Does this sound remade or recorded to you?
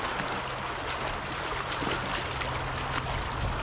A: recorded